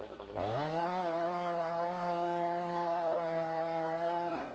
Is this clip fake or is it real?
fake